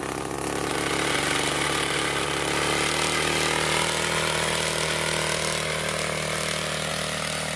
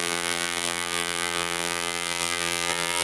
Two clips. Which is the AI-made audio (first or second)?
second